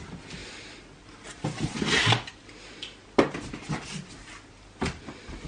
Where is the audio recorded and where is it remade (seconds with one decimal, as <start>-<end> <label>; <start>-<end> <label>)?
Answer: 0.0-5.5 recorded